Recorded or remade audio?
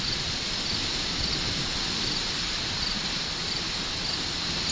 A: recorded